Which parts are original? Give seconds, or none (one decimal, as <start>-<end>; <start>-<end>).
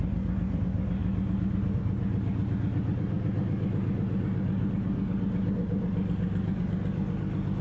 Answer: 0.0-7.6